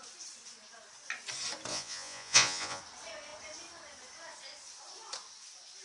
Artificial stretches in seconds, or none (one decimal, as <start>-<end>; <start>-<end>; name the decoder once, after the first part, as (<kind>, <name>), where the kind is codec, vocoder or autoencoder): 1.7-2.8 (vocoder, Vocos)